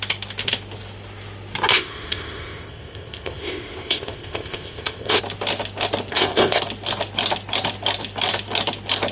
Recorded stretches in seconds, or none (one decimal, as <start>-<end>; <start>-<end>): 0.0-1.7; 5.2-6.1; 6.6-9.1